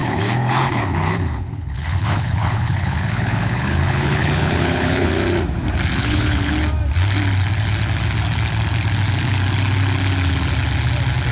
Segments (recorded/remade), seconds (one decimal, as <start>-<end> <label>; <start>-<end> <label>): 0.0-5.1 remade; 5.1-6.0 recorded; 6.0-6.5 remade; 6.5-11.3 recorded